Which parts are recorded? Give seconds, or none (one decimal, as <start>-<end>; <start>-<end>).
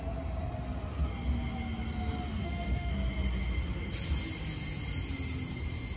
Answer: 0.0-2.3; 2.9-6.0